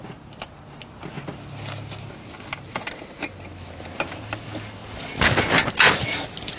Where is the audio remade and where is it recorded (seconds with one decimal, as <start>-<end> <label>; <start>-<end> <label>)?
0.0-6.6 recorded